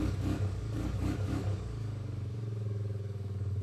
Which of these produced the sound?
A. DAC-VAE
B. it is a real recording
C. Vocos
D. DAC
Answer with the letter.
D